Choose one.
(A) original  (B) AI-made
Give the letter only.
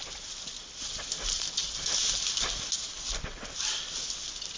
A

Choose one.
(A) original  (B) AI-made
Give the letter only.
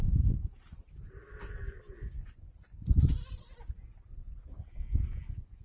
A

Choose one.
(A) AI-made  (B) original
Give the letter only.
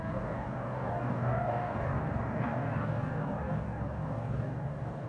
A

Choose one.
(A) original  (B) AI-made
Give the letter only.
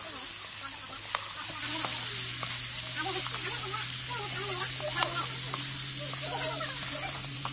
A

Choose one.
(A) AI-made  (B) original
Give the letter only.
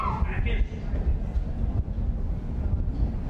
B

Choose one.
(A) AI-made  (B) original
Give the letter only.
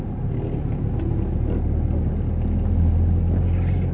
B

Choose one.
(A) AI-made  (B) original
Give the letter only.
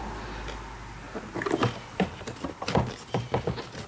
B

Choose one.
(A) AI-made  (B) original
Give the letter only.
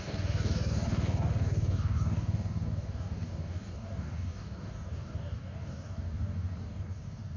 A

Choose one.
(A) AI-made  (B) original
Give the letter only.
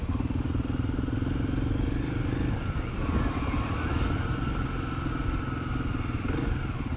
B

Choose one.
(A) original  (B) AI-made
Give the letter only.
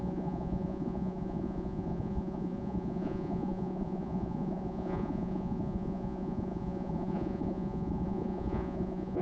B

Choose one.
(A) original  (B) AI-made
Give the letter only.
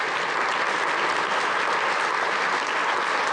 A